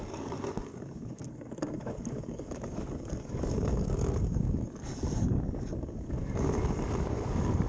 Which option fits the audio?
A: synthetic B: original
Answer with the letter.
A